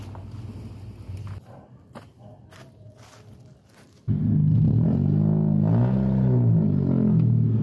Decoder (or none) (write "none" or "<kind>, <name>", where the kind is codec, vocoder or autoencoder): none